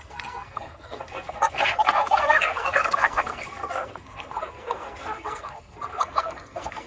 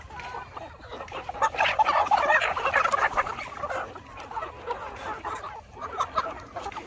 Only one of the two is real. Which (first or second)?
second